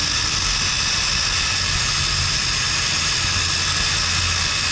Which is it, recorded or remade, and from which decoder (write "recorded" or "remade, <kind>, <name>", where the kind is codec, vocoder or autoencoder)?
recorded